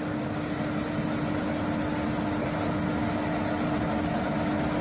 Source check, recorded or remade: recorded